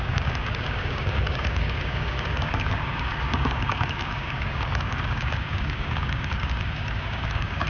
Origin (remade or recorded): remade